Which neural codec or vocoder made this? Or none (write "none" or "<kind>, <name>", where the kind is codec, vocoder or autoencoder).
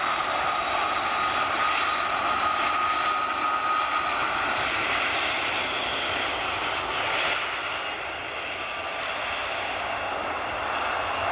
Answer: none